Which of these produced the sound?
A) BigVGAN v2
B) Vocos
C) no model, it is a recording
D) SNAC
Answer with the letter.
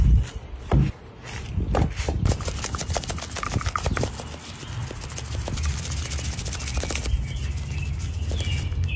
C